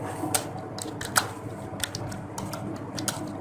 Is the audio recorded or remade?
recorded